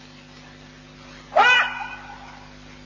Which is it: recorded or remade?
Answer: recorded